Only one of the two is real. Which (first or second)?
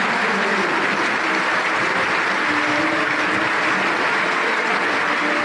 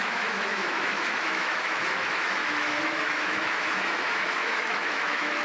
first